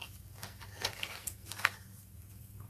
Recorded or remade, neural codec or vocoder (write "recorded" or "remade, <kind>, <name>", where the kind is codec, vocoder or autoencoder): remade, codec, SNAC